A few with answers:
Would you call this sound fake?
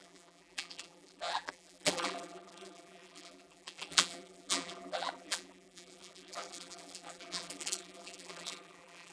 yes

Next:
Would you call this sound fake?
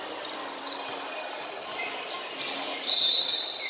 yes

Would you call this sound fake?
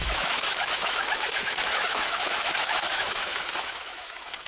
yes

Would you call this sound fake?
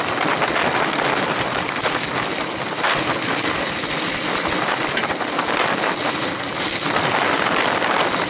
no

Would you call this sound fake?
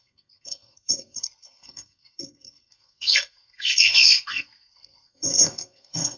yes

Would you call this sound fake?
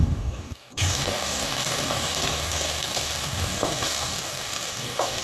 yes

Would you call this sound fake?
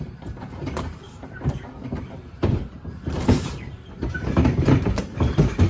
yes